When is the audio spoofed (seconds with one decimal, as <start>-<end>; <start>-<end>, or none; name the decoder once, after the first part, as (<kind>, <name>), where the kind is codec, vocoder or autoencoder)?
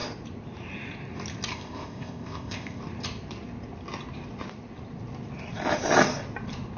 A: 1.5-2.8 (codec, ZipCodec)